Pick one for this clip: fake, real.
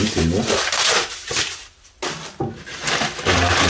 real